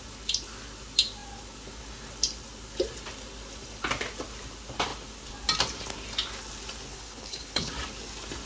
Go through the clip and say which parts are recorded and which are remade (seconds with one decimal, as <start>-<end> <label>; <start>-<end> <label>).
0.0-6.9 recorded; 6.9-7.7 remade; 7.7-8.5 recorded